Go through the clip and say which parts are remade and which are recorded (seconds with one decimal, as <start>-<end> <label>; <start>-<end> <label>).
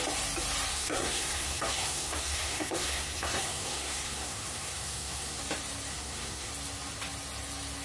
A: 0.0-0.7 recorded; 0.7-5.4 remade; 5.4-5.9 recorded; 5.9-6.5 remade; 6.5-7.8 recorded